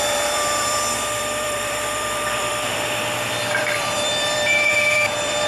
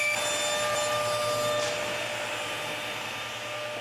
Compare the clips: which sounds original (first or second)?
second